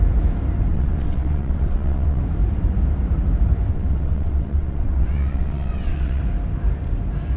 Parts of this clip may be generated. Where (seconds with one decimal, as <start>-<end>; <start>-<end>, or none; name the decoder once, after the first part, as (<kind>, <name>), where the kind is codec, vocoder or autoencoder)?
0.7-2.2 (vocoder, WaveNeXt); 3.7-6.2